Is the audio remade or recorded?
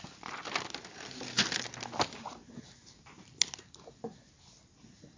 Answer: recorded